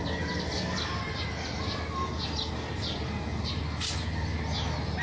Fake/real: real